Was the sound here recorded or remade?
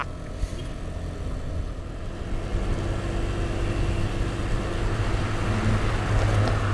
recorded